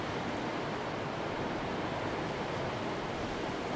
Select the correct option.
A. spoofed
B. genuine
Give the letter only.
B